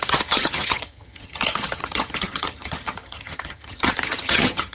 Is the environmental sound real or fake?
fake